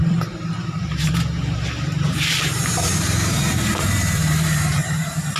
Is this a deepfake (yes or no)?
yes